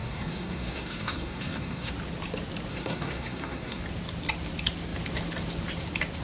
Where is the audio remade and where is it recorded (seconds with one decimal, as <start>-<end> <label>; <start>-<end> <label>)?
0.0-1.9 remade; 1.9-2.7 recorded; 2.7-3.8 remade; 3.8-6.2 recorded